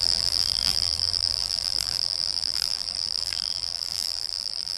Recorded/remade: remade